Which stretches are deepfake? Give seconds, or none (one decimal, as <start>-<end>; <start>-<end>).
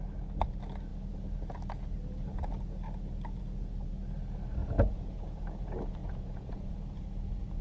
4.6-5.2; 6.0-6.7